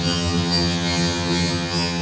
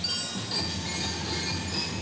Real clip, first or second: second